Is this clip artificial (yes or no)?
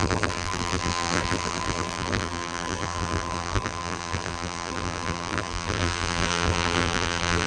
yes